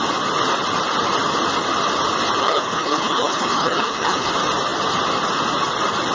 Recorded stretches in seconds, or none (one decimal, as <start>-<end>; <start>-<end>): 0.0-2.4; 4.3-6.1